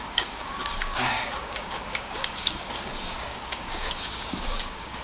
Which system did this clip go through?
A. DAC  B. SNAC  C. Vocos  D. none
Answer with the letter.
A